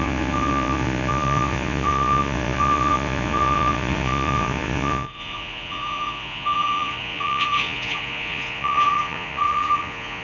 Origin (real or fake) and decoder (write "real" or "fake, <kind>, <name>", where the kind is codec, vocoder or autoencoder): fake, vocoder, Vocos